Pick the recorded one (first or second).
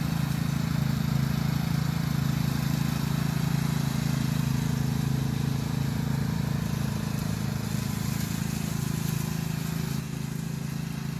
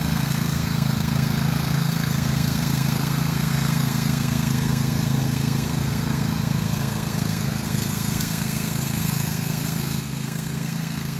first